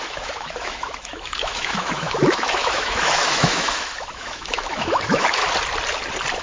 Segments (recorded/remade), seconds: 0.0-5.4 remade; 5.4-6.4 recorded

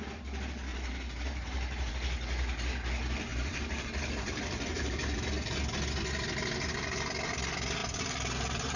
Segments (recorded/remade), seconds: 0.0-0.7 recorded; 0.7-1.9 remade; 1.9-3.3 recorded; 3.3-5.6 remade; 5.6-7.8 recorded; 7.8-8.8 remade

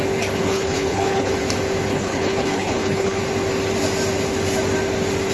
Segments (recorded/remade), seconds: 0.0-0.4 recorded; 0.4-1.3 remade; 1.3-1.9 recorded; 1.9-3.2 remade; 3.2-5.3 recorded

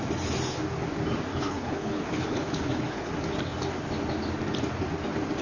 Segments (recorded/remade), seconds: 0.0-1.3 recorded; 1.3-3.1 remade; 3.1-5.4 recorded